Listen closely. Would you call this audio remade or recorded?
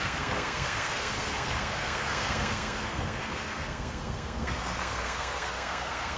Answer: remade